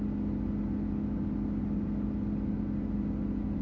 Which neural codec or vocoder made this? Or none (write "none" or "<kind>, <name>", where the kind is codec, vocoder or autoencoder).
none